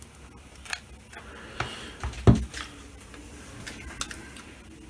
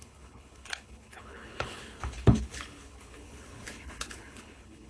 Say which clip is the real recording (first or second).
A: first